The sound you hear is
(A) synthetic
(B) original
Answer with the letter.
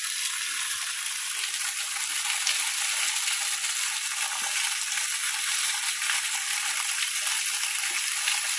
B